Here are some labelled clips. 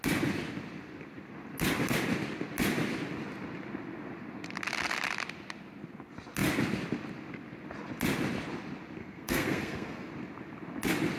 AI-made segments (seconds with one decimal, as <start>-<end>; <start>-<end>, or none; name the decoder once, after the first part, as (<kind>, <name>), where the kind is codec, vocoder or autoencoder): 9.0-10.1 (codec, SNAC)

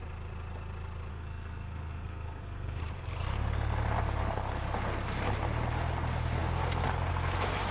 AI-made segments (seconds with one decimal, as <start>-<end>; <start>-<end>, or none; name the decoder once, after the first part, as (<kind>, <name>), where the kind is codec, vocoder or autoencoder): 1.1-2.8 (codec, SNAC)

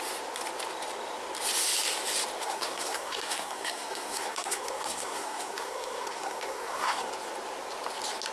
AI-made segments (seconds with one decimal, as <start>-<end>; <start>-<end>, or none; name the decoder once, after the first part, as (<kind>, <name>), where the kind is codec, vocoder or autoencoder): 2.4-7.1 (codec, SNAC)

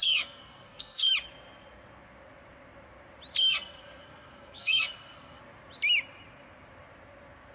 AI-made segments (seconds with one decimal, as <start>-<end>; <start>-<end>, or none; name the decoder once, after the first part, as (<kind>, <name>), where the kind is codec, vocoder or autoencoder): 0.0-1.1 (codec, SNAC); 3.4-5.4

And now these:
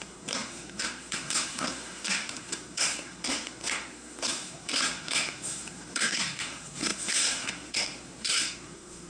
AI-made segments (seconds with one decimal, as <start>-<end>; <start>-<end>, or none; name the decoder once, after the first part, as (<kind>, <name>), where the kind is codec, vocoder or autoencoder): 0.0-9.1 (codec, SNAC)

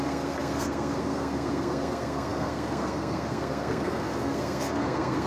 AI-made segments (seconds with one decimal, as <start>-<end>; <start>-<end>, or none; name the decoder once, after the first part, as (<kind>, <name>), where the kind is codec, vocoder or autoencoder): 0.0-5.3 (codec, SNAC)